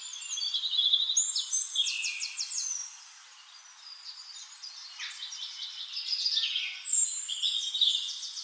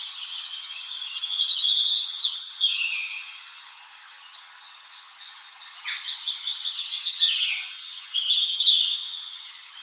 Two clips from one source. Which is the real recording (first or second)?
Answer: first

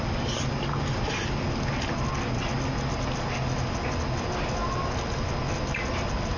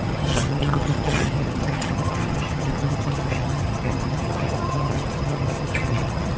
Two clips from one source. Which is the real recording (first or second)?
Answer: first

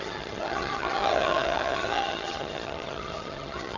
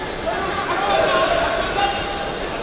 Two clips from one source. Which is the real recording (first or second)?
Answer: second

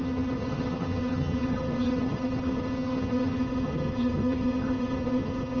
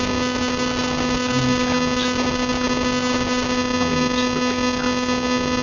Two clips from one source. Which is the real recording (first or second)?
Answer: second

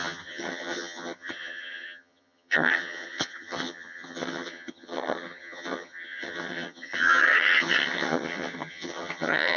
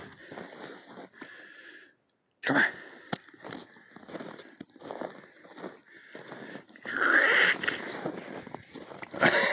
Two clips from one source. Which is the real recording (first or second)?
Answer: second